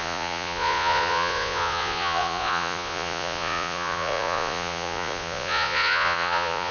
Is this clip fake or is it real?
fake